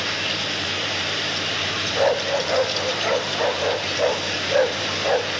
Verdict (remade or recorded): remade